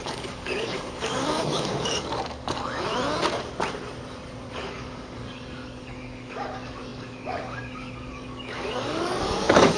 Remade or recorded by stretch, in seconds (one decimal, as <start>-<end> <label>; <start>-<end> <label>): 0.0-2.9 remade; 2.9-4.5 recorded; 4.5-9.8 remade